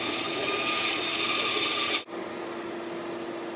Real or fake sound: real